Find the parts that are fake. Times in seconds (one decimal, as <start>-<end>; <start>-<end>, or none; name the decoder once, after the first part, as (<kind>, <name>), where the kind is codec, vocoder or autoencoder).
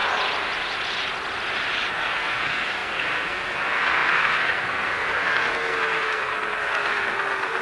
1.9-7.6 (codec, SNAC)